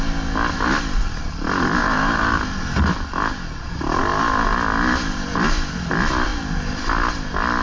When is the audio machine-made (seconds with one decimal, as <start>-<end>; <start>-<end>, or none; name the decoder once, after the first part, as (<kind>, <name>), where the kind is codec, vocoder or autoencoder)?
1.8-2.6 (vocoder, BigVGAN v2)